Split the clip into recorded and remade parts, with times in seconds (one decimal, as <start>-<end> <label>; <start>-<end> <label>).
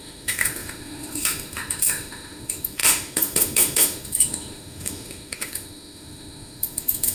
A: 0.0-7.1 remade